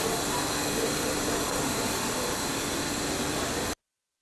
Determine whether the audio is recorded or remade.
remade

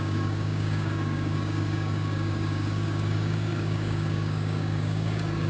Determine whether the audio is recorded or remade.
remade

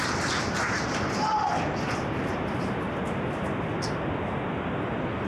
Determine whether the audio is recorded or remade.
recorded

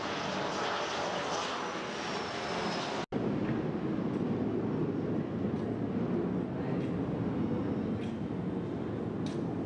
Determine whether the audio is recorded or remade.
recorded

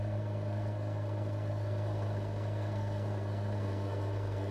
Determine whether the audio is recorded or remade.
remade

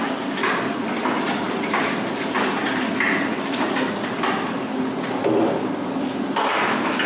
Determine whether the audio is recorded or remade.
recorded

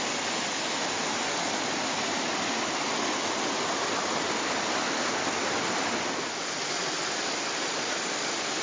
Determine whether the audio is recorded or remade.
recorded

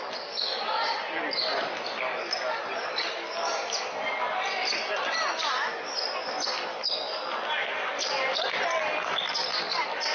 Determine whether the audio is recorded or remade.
recorded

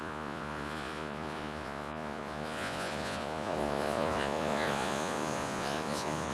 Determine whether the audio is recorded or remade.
remade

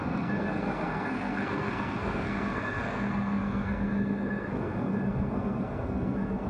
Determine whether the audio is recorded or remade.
remade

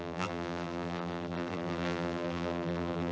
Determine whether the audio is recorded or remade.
remade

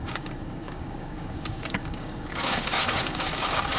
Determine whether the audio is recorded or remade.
remade